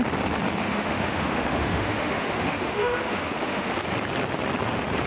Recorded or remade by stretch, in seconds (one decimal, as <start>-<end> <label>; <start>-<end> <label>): 0.0-0.6 recorded; 0.6-3.7 remade; 3.7-5.1 recorded